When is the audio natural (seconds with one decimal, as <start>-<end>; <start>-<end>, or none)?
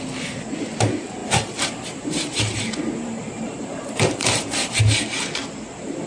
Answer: 0.0-1.2; 4.8-6.1